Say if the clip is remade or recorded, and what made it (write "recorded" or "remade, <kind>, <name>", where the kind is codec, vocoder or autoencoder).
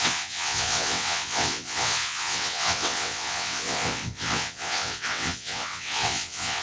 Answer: remade, vocoder, WaveNeXt